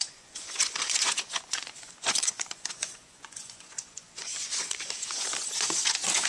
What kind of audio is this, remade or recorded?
remade